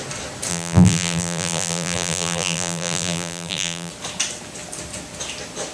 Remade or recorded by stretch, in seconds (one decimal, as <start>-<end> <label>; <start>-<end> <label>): 0.0-0.5 recorded; 0.5-3.9 remade; 3.9-5.7 recorded

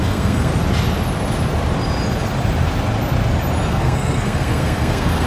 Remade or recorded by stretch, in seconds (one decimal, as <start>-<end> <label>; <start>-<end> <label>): 0.0-0.5 remade; 0.5-3.7 recorded; 3.7-5.3 remade

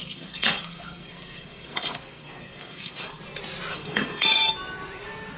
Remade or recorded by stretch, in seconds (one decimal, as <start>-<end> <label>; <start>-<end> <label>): 0.0-3.2 remade; 3.2-3.7 recorded; 3.7-4.5 remade; 4.5-5.4 recorded